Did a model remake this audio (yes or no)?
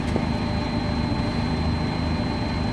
no